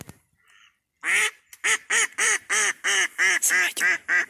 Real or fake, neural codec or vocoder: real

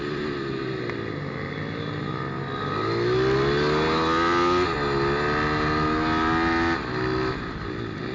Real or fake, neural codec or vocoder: real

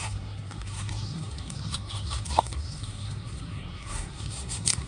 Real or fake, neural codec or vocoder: fake, codec, SNAC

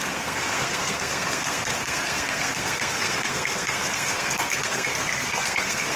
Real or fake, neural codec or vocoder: fake, codec, SNAC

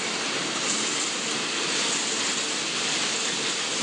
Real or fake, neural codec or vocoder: real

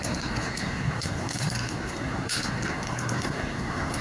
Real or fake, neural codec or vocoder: fake, codec, SNAC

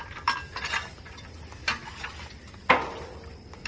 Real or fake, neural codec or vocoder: real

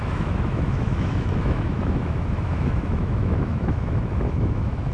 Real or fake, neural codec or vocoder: fake, autoencoder, DAC-VAE